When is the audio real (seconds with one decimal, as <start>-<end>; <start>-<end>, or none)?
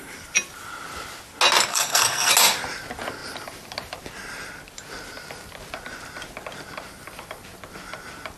0.0-1.7; 2.3-8.4